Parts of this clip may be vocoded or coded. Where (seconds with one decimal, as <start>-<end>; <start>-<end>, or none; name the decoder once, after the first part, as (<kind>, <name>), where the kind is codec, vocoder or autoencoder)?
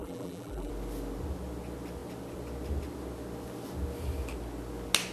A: 0.0-0.7 (vocoder, BigVGAN v2)